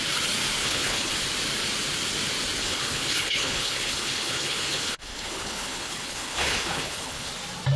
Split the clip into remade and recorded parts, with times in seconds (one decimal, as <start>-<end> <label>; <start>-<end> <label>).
0.0-0.6 recorded; 0.6-1.1 remade; 1.1-2.6 recorded; 2.6-7.3 remade; 7.3-7.8 recorded